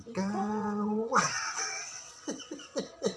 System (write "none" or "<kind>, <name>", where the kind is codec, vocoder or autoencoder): vocoder, WaveNeXt